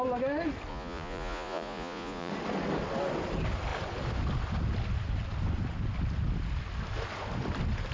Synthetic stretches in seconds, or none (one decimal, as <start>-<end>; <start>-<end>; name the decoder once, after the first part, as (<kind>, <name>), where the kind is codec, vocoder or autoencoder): 0.7-2.3 (vocoder, Vocos)